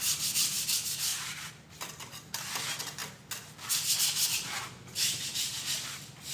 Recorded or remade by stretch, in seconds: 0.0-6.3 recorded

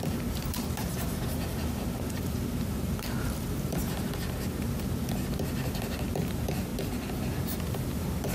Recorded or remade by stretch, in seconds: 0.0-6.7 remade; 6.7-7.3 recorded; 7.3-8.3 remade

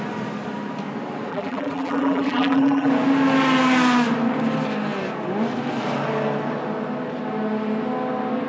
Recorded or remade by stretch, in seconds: 0.0-1.3 recorded; 1.3-2.9 remade; 2.9-8.5 recorded

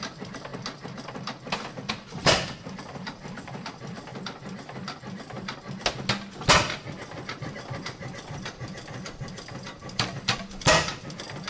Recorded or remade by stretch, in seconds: 0.0-0.5 remade; 0.5-1.9 recorded; 1.9-4.1 remade; 4.1-7.4 recorded; 7.4-11.5 remade